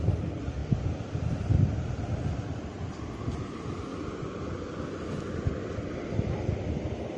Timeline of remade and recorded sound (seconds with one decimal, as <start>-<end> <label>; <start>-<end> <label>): 0.0-7.2 recorded